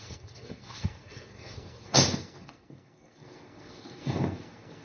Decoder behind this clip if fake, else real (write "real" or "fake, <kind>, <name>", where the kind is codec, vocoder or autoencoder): fake, codec, SNAC